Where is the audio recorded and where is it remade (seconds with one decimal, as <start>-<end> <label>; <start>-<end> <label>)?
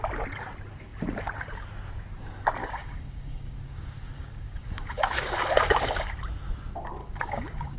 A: 0.0-2.6 recorded; 2.6-6.1 remade; 6.1-7.0 recorded; 7.0-7.8 remade